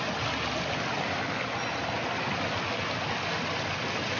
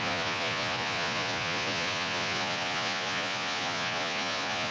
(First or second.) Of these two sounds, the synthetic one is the second